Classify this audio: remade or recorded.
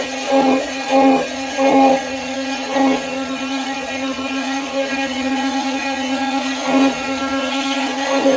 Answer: remade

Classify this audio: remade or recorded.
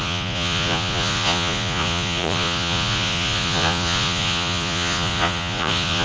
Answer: remade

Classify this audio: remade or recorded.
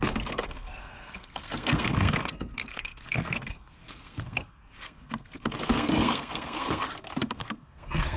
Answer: remade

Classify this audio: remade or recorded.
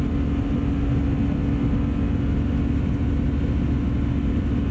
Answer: recorded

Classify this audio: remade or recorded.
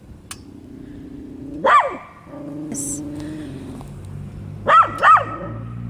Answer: recorded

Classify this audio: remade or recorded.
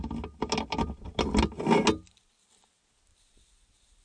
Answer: recorded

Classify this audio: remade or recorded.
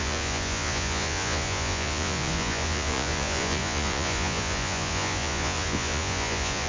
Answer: remade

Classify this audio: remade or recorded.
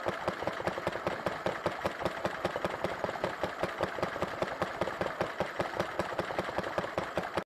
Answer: recorded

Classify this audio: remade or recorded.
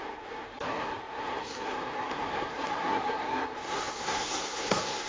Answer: remade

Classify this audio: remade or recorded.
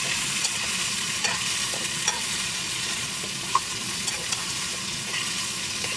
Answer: remade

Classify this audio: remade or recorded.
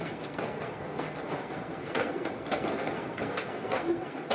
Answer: remade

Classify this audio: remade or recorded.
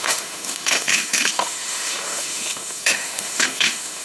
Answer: remade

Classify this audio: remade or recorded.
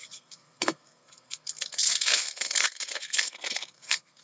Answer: remade